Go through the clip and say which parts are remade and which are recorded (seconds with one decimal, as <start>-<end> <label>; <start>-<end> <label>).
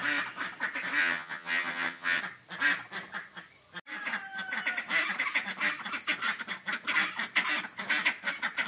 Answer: 0.0-1.0 recorded; 1.0-2.2 remade; 2.2-8.7 recorded